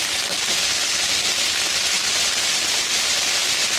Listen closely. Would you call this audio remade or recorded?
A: recorded